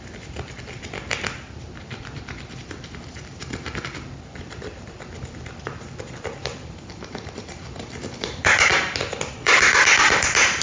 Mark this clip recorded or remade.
remade